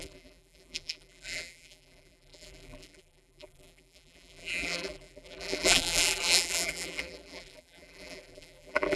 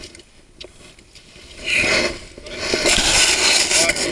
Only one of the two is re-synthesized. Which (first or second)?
first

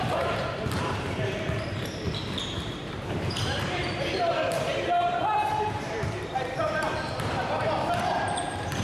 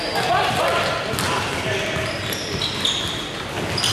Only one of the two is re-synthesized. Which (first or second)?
first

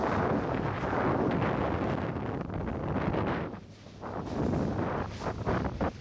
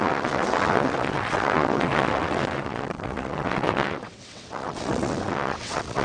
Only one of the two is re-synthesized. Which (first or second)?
second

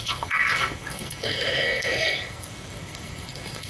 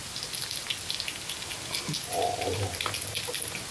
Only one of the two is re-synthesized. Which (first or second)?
first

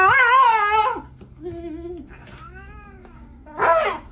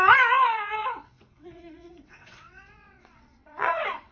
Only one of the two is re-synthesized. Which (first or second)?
second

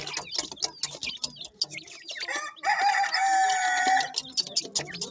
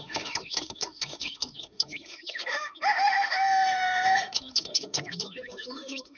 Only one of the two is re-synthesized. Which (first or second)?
second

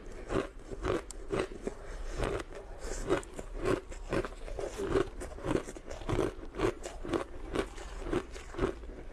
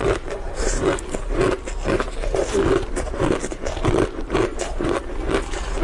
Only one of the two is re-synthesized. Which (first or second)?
first